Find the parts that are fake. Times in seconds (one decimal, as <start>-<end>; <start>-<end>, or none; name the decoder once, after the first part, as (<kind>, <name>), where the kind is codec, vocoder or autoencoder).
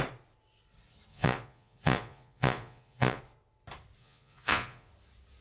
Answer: 1.1-3.2 (vocoder, Vocos); 4.0-4.9